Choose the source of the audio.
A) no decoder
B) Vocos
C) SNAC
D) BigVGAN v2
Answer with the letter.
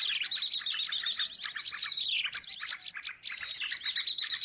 A